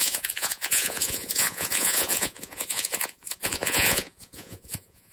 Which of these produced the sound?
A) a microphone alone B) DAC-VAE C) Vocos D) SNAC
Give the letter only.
C